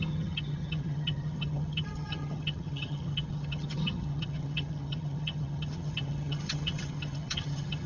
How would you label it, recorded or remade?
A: remade